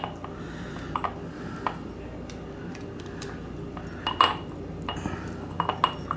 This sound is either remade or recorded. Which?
recorded